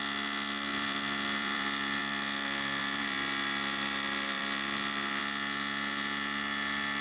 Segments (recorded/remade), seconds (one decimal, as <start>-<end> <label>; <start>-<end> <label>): 0.0-0.7 recorded; 0.7-2.0 remade; 2.0-2.8 recorded; 2.8-5.2 remade; 5.2-7.0 recorded